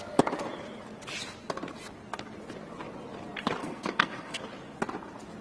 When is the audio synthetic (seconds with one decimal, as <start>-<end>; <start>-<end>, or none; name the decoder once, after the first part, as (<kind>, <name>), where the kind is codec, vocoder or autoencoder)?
3.6-4.4 (codec, SNAC)